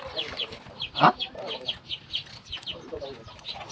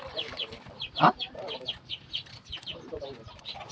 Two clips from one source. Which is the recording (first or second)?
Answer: first